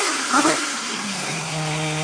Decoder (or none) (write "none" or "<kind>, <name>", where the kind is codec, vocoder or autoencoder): codec, SNAC